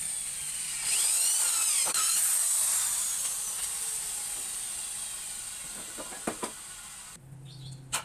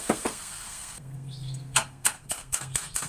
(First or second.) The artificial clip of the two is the second